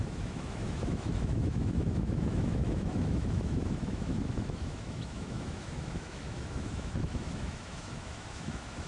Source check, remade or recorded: remade